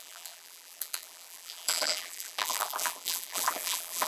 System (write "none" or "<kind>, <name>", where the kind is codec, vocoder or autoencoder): vocoder, BigVGAN v2